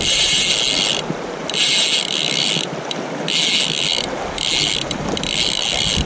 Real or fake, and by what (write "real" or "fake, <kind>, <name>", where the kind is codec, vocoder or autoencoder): real